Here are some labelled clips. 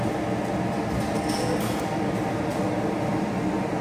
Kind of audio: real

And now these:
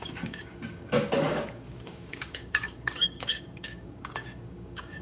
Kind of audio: fake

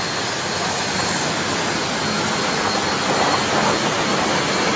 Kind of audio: real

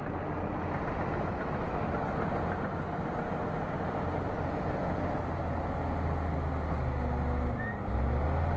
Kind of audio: real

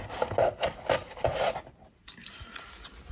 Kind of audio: real